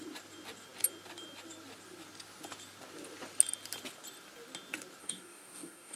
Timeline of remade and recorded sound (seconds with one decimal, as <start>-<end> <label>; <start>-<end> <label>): 0.0-5.0 recorded; 5.0-6.0 remade